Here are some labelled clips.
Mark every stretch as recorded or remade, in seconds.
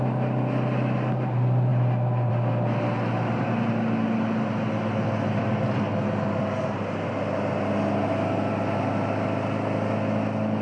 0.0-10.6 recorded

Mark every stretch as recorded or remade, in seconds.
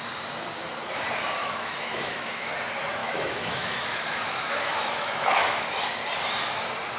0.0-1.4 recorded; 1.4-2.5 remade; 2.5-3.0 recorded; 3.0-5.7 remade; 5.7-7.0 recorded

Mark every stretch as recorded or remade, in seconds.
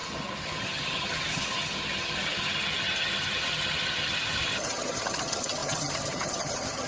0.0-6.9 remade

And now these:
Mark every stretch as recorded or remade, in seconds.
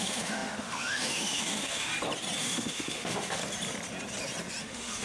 0.0-1.9 remade; 1.9-2.4 recorded; 2.4-3.4 remade; 3.4-4.6 recorded; 4.6-5.0 remade